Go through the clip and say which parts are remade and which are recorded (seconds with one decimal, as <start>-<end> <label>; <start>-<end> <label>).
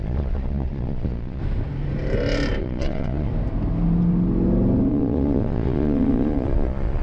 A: 0.0-1.4 remade; 1.4-2.6 recorded; 2.6-3.3 remade; 3.3-4.9 recorded; 4.9-7.0 remade